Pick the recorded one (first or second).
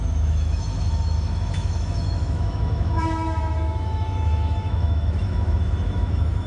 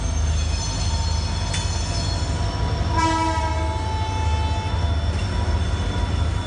second